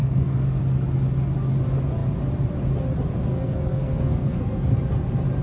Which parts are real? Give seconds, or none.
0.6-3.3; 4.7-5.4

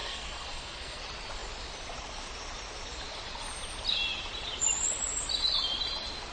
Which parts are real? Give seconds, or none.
1.0-6.3

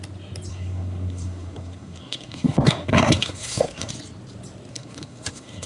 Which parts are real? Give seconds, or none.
0.0-0.5; 3.9-4.7